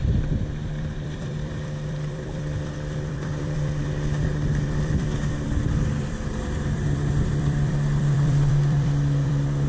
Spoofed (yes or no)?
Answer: yes